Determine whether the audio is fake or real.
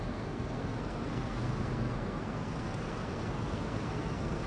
fake